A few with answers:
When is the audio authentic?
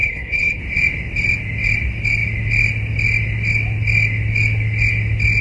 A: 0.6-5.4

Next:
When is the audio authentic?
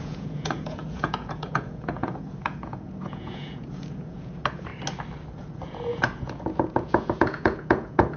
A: 4.7-5.4